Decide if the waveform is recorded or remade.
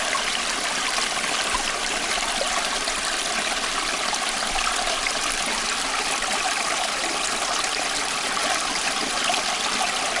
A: recorded